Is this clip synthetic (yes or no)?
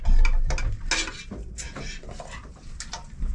no